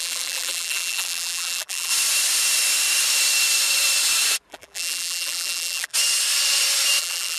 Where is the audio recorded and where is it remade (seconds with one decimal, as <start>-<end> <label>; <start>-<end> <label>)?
0.0-1.9 remade; 1.9-4.5 recorded; 4.5-5.9 remade; 5.9-7.0 recorded; 7.0-7.4 remade